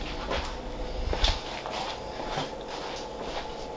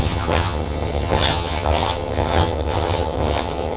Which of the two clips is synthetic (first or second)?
second